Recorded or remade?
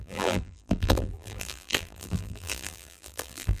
remade